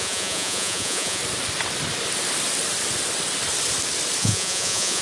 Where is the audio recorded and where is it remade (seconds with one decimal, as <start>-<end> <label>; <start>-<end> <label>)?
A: 0.0-1.2 remade; 1.2-4.2 recorded; 4.2-5.0 remade